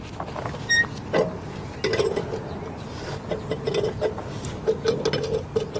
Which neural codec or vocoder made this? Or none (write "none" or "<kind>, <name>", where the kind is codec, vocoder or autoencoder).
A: none